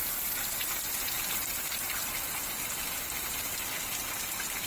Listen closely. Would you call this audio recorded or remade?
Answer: recorded